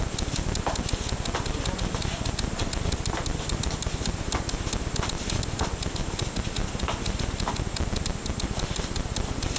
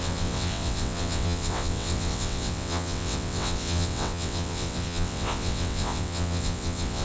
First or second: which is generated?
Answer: second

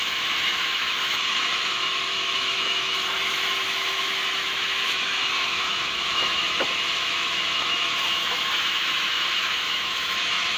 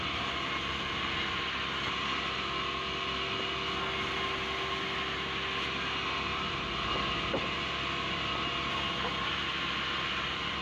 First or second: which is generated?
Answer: first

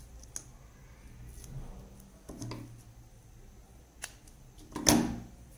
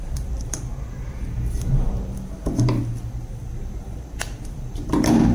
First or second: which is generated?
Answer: second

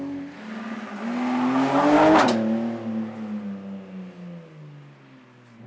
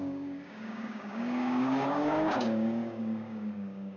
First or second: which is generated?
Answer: second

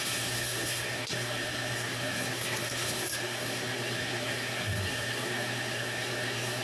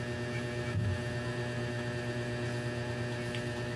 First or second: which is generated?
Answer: first